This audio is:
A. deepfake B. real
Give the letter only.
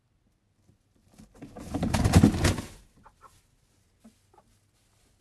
B